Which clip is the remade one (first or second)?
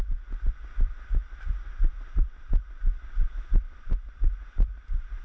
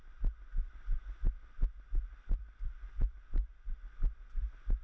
first